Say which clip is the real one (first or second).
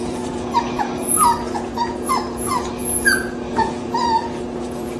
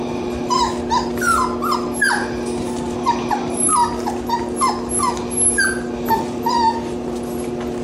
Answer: second